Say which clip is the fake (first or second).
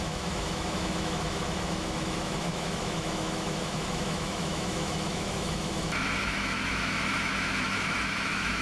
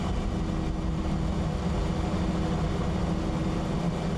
first